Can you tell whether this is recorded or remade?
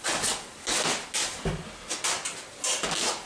recorded